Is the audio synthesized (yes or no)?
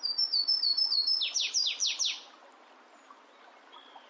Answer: no